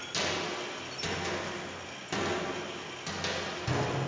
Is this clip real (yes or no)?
yes